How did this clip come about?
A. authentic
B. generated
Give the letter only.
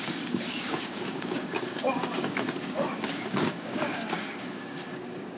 B